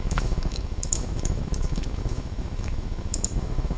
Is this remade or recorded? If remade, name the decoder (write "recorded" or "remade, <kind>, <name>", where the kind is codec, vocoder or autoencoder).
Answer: remade, autoencoder, DAC-VAE